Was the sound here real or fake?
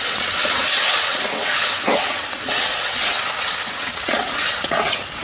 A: fake